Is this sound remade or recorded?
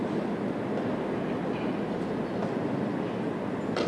recorded